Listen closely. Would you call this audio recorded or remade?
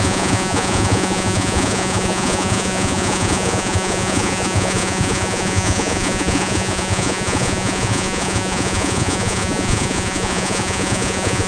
remade